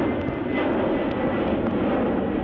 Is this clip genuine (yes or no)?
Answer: yes